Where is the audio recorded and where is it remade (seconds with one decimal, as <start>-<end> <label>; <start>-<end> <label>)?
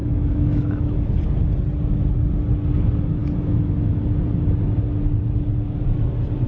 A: 0.0-1.1 remade; 1.1-3.2 recorded; 3.2-3.9 remade; 3.9-6.5 recorded